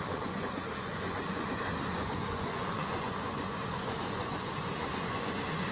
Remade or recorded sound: remade